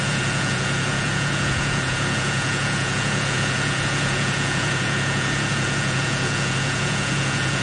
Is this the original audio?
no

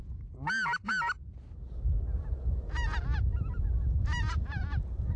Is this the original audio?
yes